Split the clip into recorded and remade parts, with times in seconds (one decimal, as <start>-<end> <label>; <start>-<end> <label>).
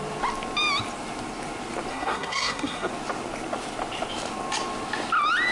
0.0-1.9 recorded; 1.9-2.9 remade; 2.9-5.5 recorded